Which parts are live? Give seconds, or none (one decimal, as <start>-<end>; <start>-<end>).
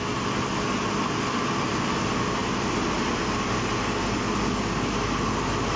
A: 0.0-5.8